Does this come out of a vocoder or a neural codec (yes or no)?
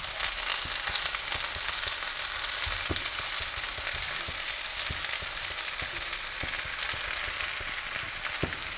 no